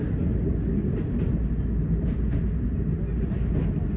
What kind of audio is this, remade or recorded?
recorded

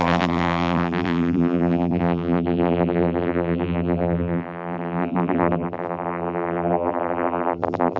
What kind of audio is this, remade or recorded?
remade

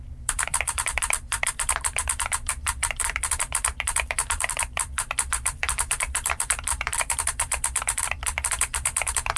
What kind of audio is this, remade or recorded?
remade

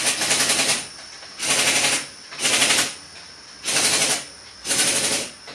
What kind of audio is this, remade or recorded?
recorded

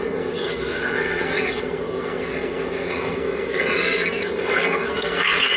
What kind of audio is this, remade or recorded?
remade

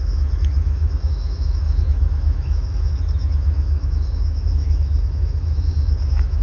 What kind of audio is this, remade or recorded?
remade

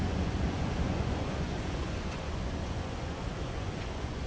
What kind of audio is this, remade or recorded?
remade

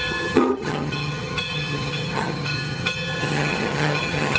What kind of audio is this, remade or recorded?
remade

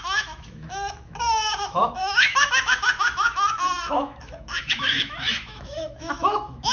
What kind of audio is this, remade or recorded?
remade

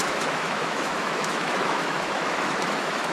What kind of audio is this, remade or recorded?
remade